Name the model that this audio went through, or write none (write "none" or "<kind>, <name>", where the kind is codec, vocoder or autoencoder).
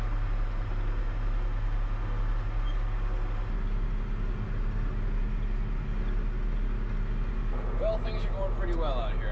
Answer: none